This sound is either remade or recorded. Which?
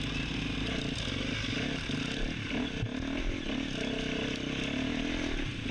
recorded